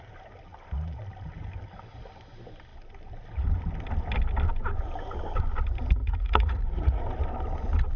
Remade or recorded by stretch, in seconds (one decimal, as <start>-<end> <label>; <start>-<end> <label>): 0.0-6.0 recorded; 6.0-7.0 remade; 7.0-8.0 recorded